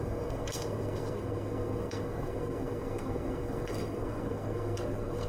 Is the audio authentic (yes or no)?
no